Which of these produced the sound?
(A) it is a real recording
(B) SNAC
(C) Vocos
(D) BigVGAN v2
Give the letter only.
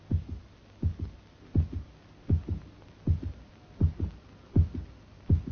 A